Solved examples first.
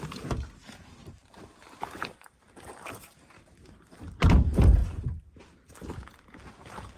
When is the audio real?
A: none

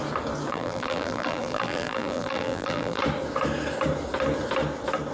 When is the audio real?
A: 0.0-0.5; 3.0-5.1